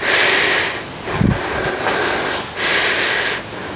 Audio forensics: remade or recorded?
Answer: recorded